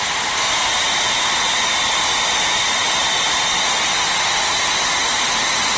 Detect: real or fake real